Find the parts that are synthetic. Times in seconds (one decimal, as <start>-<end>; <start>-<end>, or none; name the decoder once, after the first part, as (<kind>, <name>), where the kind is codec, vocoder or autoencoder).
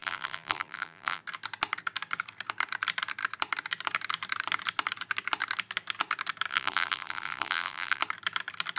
0.0-1.2 (vocoder, BigVGAN v2); 6.5-8.0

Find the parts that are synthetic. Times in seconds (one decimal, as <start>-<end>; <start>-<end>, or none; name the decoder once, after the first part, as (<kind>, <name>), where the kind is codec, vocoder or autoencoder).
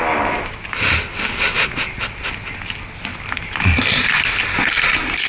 3.1-3.6 (vocoder, BigVGAN v2)